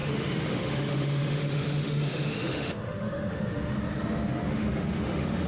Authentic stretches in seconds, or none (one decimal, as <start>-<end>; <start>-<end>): 3.8-4.5